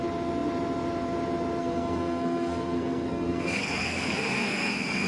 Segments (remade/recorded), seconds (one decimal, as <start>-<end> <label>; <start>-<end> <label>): 0.0-1.6 recorded; 1.6-5.1 remade